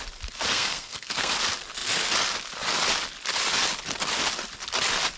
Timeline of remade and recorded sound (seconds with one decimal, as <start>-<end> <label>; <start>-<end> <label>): 0.0-0.5 recorded; 0.5-1.3 remade; 1.3-5.2 recorded